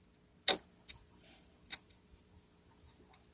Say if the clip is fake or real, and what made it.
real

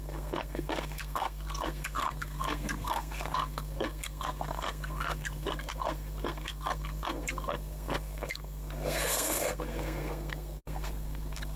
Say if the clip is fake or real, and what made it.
fake, codec, SNAC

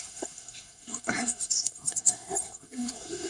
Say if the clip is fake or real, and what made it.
fake, codec, SNAC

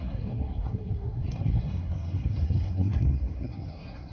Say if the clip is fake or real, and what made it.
fake, codec, SNAC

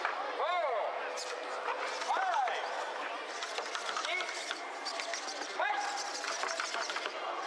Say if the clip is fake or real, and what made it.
real